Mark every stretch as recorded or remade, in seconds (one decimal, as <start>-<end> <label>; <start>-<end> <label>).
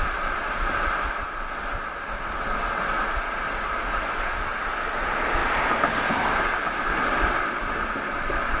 0.0-8.6 recorded